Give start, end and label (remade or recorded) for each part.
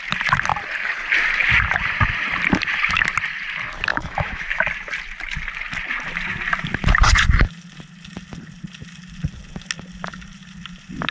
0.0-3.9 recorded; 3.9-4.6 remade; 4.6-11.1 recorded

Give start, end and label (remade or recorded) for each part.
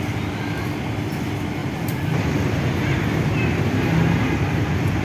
0.0-1.6 recorded; 1.6-4.6 remade; 4.6-5.0 recorded